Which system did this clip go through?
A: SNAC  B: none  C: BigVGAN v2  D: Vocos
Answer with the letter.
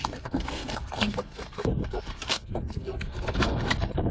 A